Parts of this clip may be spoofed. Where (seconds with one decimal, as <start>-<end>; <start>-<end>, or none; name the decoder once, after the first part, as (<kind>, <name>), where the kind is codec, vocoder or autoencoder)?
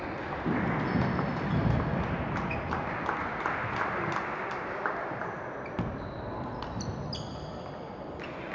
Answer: none